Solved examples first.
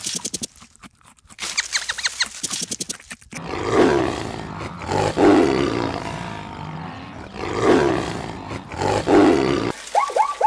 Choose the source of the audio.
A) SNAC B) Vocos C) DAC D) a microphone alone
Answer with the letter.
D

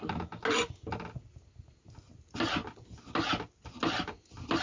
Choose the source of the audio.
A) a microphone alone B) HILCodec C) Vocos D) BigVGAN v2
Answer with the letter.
A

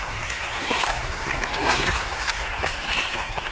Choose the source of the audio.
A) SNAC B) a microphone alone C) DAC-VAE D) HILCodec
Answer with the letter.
A